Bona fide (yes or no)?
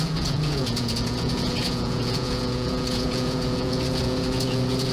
no